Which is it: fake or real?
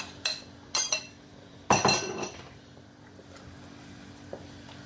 fake